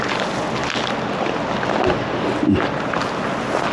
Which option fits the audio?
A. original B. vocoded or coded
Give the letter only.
A